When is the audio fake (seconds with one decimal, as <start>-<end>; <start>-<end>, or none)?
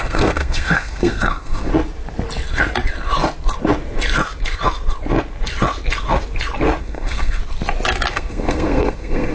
0.0-1.7; 6.8-7.4; 8.1-9.3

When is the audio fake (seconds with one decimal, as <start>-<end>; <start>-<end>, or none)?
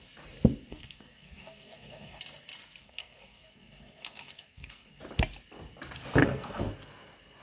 0.7-2.2; 2.8-5.0; 6.2-6.7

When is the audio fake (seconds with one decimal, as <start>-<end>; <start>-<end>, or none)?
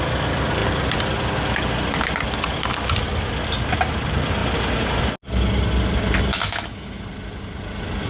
6.3-7.0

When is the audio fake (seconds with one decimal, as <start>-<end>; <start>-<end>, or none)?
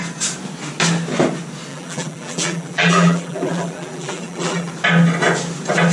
1.7-4.7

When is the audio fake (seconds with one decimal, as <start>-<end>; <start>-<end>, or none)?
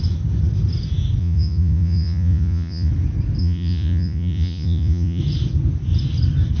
1.2-2.9; 3.4-5.2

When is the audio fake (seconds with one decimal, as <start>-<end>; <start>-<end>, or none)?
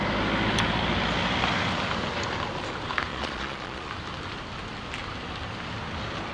3.1-3.9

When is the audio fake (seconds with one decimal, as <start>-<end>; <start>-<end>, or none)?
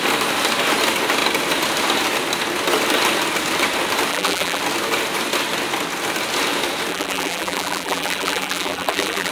4.1-4.6; 6.9-9.3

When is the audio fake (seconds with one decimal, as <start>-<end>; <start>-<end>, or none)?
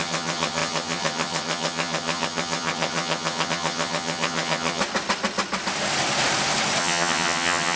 0.0-4.8; 6.8-7.8